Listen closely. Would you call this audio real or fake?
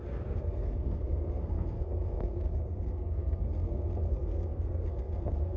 fake